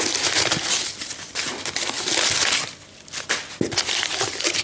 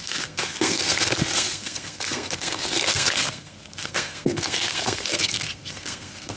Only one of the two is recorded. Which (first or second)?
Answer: first